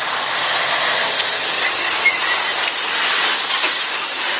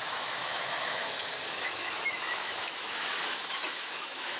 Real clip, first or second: first